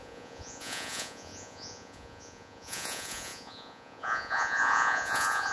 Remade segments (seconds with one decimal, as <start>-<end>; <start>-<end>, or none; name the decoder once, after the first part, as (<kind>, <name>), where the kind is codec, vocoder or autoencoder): 0.0-5.5 (vocoder, Vocos)